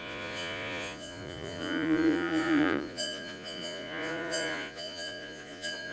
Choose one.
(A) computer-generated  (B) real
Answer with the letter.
A